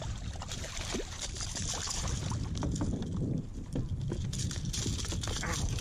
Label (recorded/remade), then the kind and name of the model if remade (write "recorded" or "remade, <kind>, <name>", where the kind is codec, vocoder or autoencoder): remade, vocoder, BigVGAN v2